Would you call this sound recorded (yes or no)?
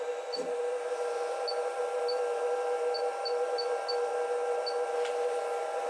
yes